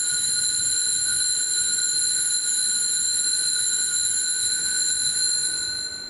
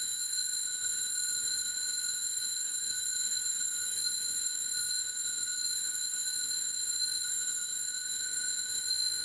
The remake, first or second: second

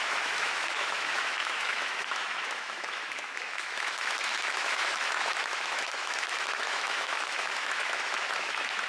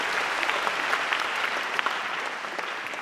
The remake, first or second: first